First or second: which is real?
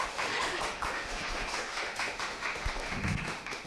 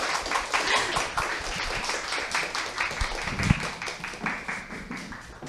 second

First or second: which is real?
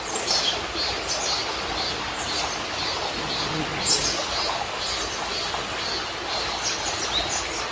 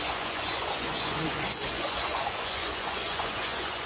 first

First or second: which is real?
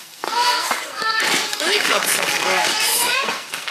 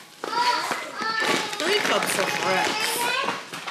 second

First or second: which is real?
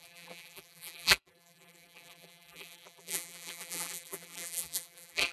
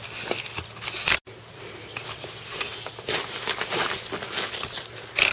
second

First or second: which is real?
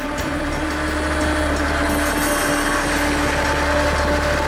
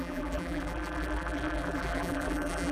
first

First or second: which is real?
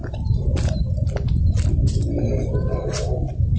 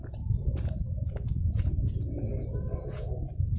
first